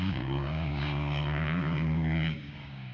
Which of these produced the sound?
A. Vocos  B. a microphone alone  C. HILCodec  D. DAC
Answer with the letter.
D